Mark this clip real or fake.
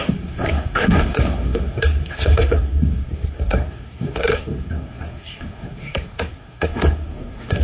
fake